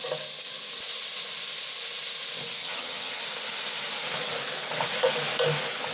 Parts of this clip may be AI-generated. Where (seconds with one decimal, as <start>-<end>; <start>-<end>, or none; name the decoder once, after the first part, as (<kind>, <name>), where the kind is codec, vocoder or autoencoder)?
2.6-3.2 (vocoder, HiFi-GAN)